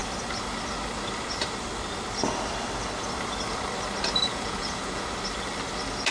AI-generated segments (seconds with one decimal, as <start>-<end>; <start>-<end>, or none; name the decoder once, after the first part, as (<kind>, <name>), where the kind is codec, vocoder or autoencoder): 4.3-5.1 (vocoder, Vocos)